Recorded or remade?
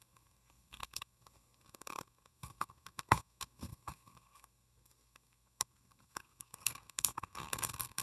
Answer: remade